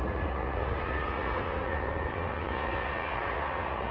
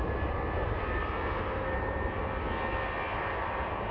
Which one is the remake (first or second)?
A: first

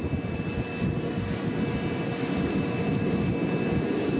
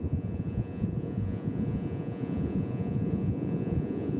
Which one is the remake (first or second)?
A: second